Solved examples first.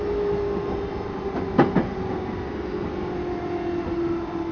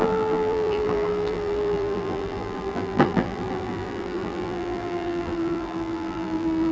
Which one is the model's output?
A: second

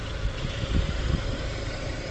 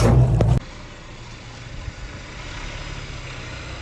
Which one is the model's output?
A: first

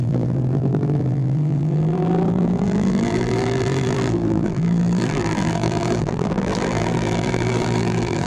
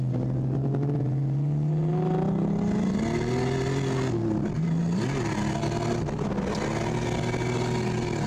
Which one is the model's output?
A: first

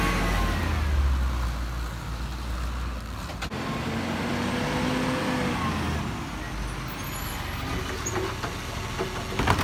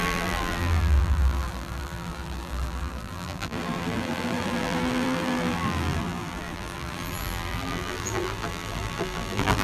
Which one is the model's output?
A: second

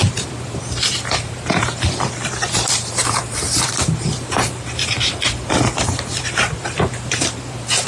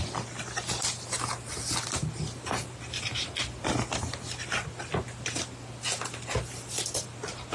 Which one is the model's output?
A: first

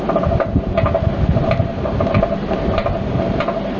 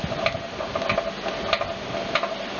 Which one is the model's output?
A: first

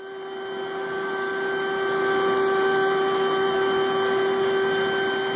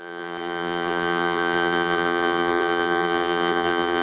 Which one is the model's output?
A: second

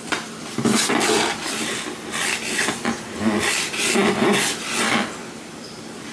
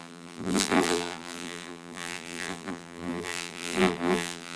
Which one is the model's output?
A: second